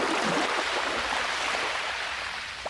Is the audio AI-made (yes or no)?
no